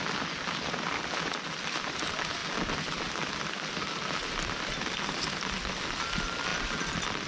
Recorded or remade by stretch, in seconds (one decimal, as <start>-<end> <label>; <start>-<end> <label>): 0.0-7.3 recorded